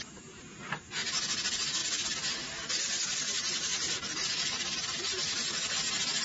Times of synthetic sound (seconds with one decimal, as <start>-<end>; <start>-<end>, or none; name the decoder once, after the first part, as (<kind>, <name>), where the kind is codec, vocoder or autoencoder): 1.8-2.7 (vocoder, BigVGAN v2)